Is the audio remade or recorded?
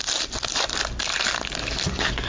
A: recorded